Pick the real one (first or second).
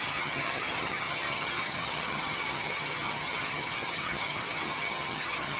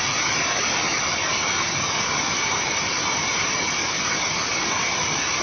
second